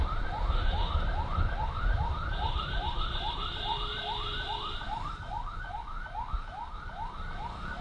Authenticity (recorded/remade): remade